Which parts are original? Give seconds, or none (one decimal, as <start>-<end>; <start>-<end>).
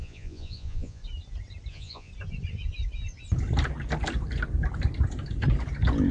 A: 1.0-1.7; 2.1-6.1